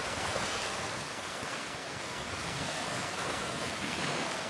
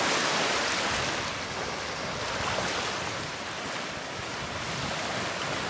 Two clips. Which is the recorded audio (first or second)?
second